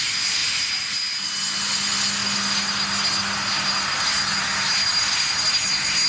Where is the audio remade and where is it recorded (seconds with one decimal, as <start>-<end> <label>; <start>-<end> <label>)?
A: 0.0-6.1 recorded